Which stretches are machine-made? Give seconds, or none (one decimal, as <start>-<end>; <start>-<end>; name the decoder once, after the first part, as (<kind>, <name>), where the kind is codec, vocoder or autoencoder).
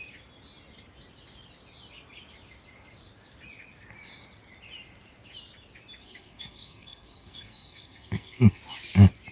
6.0-8.6 (codec, SNAC)